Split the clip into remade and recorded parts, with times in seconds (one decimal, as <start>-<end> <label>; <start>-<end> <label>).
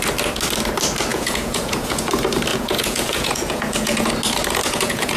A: 0.0-1.1 recorded; 1.1-2.1 remade; 2.1-2.5 recorded; 2.5-4.1 remade; 4.1-4.6 recorded; 4.6-5.2 remade